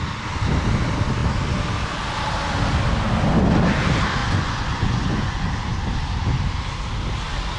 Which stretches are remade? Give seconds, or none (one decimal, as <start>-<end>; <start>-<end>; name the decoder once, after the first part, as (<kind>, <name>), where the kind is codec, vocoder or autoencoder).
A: 4.2-5.5 (vocoder, Vocos)